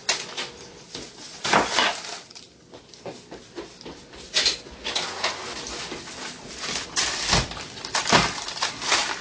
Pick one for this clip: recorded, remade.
recorded